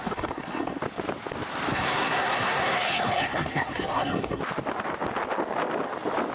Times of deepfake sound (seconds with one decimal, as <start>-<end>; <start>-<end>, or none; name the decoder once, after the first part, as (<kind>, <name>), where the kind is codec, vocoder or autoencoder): 0.0-0.8 (codec, SNAC); 1.7-4.4